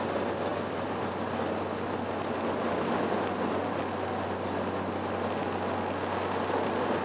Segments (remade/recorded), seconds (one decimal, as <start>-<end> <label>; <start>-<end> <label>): 0.0-7.0 recorded

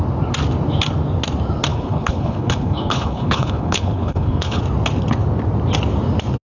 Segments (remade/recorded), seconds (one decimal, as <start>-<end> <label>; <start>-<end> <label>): 0.0-1.7 recorded; 1.7-4.6 remade; 4.6-6.4 recorded

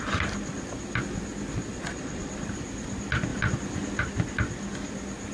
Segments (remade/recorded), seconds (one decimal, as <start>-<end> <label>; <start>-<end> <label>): 0.0-1.7 recorded; 1.7-2.3 remade; 2.3-5.3 recorded

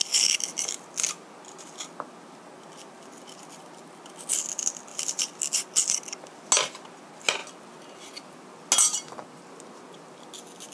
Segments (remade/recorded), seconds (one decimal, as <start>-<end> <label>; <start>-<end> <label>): 0.0-4.9 recorded; 4.9-5.4 remade; 5.4-10.7 recorded

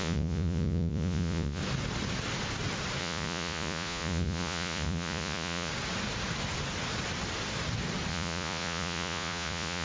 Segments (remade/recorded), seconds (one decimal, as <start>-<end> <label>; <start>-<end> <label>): 0.0-1.6 remade; 1.6-3.0 recorded; 3.0-5.7 remade; 5.7-8.1 recorded; 8.1-9.8 remade

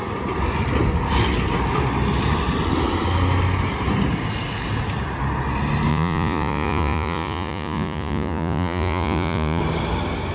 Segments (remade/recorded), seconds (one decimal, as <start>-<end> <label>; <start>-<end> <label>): 0.0-5.9 recorded; 5.9-9.6 remade; 9.6-10.3 recorded

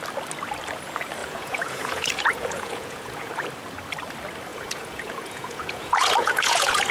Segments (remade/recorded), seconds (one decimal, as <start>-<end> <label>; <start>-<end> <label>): 0.0-1.2 recorded; 1.2-3.3 remade; 3.3-4.5 recorded; 4.5-6.9 remade